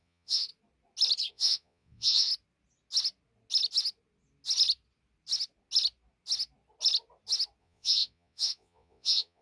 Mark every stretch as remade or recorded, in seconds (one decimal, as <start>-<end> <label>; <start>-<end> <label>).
0.0-0.5 remade; 0.5-1.3 recorded; 1.3-2.3 remade; 2.3-7.6 recorded; 7.6-9.4 remade

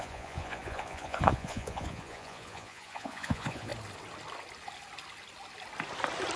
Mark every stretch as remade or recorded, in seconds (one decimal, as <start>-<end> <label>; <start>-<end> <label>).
0.0-3.7 remade; 3.7-6.4 recorded

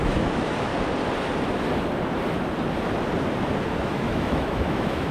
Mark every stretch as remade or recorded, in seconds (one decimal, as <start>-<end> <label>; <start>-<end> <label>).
0.0-0.7 remade; 0.7-3.8 recorded; 3.8-5.1 remade

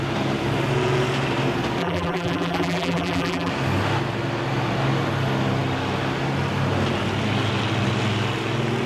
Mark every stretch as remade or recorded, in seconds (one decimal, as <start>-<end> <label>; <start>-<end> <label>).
0.0-1.8 recorded; 1.8-3.5 remade; 3.5-8.9 recorded

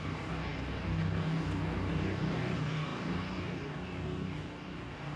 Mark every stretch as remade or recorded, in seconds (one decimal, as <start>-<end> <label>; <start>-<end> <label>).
0.0-5.2 remade